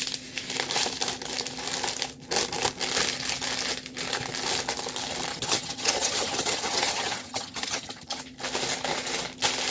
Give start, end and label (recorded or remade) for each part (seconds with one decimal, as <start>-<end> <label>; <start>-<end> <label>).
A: 0.0-5.3 recorded; 5.3-8.2 remade; 8.2-9.7 recorded